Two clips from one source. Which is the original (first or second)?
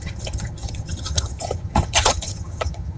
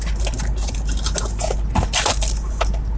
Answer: second